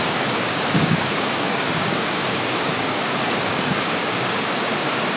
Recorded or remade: remade